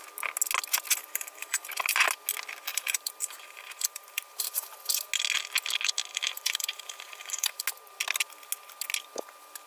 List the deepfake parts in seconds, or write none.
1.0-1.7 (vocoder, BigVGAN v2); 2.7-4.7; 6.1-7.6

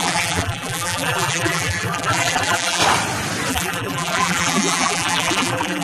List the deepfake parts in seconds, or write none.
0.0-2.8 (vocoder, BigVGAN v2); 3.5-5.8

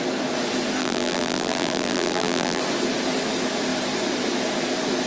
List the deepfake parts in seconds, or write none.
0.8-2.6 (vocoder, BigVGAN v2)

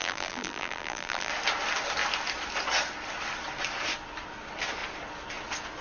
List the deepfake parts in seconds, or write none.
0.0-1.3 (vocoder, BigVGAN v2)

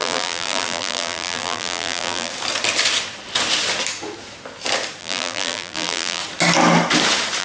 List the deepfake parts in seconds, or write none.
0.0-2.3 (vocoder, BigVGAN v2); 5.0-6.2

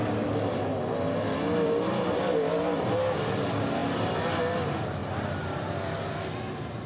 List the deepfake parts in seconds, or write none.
none

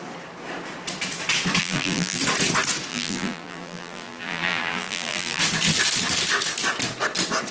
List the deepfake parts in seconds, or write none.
1.6-2.2 (vocoder, BigVGAN v2); 2.9-5.4

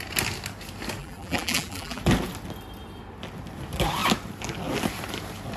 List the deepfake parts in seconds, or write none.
1.0-2.0 (vocoder, BigVGAN v2)